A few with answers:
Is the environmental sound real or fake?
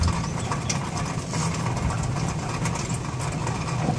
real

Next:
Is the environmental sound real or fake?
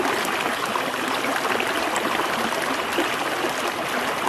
fake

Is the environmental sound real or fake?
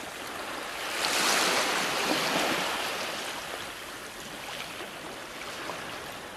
real